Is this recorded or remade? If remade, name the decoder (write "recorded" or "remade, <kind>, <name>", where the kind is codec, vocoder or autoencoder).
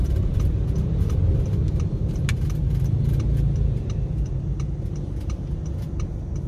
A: recorded